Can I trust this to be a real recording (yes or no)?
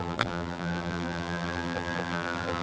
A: no